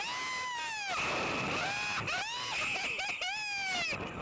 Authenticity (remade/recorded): recorded